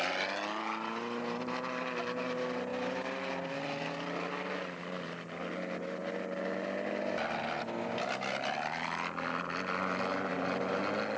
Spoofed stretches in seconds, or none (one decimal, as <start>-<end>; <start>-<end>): none